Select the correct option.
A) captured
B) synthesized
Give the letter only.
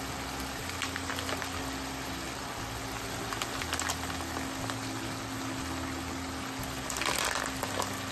A